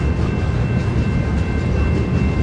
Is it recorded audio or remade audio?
recorded